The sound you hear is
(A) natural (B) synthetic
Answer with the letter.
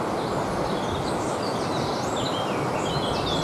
A